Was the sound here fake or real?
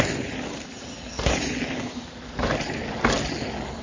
real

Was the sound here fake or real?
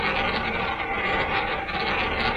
real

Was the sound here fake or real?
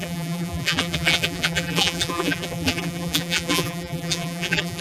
fake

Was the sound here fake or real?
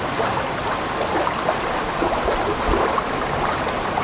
real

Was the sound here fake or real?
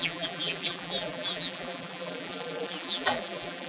fake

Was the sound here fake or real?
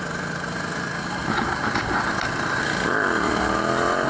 fake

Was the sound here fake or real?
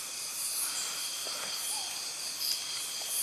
fake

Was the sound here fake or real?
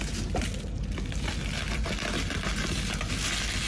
real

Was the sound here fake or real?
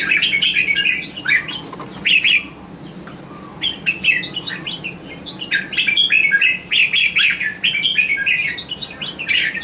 real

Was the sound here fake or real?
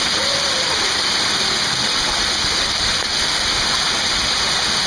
real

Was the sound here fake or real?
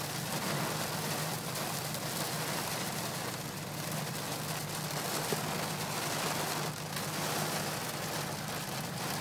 real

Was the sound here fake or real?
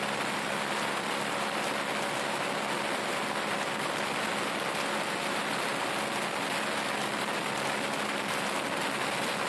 real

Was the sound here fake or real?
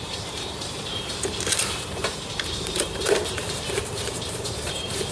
fake